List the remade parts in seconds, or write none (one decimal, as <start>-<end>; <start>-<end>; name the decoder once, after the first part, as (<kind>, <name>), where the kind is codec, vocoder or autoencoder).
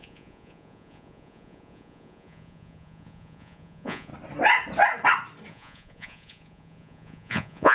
0.0-4.1 (vocoder, Vocos); 5.5-7.7